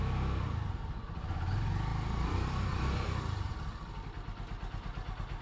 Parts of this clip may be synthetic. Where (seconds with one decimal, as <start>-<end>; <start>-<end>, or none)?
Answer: 1.9-3.5

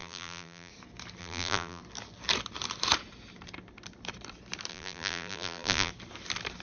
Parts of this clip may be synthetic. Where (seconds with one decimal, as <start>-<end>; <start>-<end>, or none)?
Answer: 0.0-0.7; 1.2-1.8; 4.7-5.9

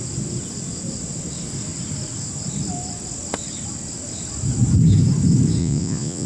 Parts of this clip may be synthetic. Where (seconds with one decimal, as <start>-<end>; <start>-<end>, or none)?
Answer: 5.6-6.3

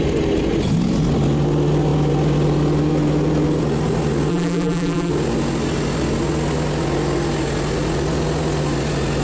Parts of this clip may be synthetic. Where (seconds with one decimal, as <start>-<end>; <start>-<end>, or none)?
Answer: 4.3-5.1

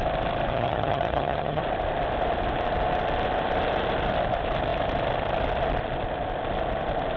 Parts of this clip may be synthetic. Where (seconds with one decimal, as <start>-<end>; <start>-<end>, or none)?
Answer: 0.5-1.6

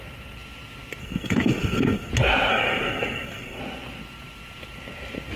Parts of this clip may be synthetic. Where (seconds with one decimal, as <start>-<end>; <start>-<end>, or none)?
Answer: 1.0-2.1; 2.5-3.6